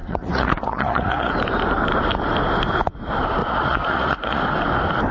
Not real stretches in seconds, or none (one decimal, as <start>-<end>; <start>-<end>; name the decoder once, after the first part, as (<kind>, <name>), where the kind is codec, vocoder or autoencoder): 0.0-1.3 (vocoder, Vocos); 3.4-4.4